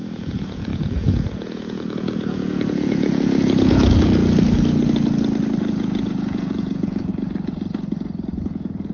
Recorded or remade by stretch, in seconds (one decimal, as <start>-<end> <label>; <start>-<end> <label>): 0.0-4.2 remade; 4.2-5.6 recorded; 5.6-7.1 remade; 7.1-8.4 recorded; 8.4-8.9 remade